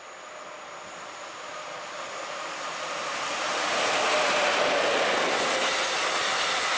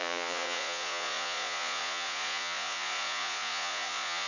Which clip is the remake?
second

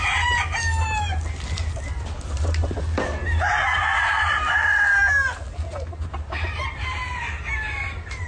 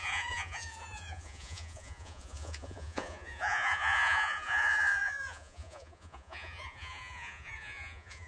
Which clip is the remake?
second